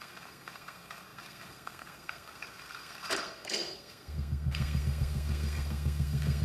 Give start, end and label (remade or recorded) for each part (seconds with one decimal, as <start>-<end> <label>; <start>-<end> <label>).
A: 0.0-6.4 remade